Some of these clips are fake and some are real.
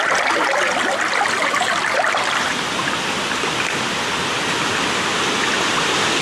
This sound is real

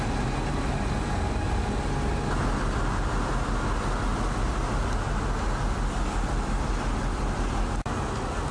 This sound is real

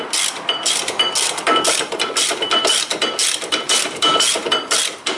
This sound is real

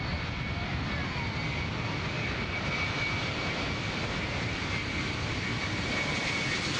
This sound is fake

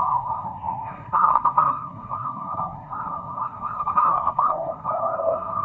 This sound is fake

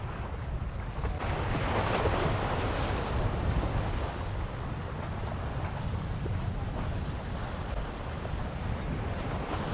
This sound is real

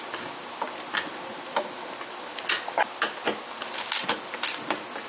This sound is real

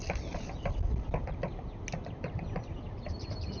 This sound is real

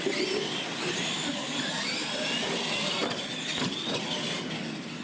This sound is real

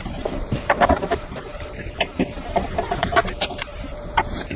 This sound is fake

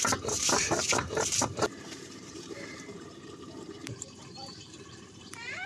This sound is fake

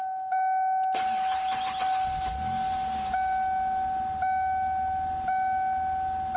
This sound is real